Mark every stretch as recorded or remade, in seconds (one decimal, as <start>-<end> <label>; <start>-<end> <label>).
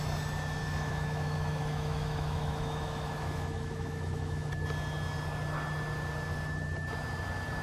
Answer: 0.0-0.6 recorded; 0.6-4.5 remade; 4.5-7.6 recorded